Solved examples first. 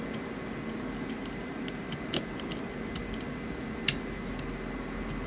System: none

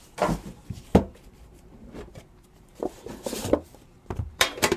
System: vocoder, BigVGAN v2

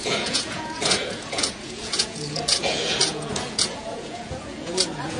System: vocoder, Vocos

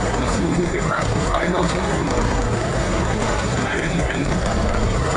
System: codec, SNAC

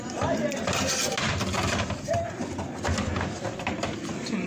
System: none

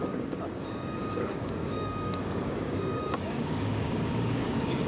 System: codec, DAC